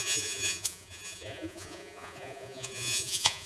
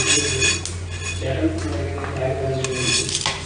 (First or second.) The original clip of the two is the second